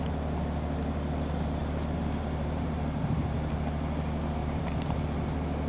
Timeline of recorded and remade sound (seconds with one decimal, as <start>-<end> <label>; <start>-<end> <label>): 0.0-1.6 recorded; 1.6-3.5 remade; 3.5-4.4 recorded; 4.4-5.0 remade; 5.0-5.7 recorded